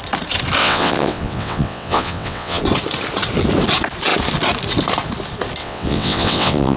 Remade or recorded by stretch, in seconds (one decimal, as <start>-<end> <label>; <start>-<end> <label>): 0.0-0.6 recorded; 0.6-2.6 remade; 2.6-5.6 recorded; 5.6-6.8 remade